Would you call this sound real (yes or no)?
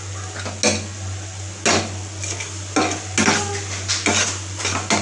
yes